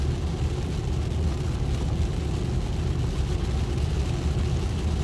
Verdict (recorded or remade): recorded